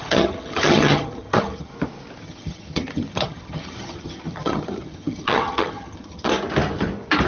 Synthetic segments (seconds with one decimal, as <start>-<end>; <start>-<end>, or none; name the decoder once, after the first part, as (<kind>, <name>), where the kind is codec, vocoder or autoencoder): 0.0-1.7 (vocoder, HiFi-GAN); 2.2-6.3